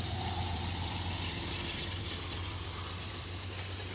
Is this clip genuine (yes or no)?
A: no